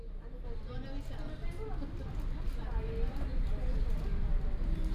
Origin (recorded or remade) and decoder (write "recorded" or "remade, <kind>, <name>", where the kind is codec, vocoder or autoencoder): recorded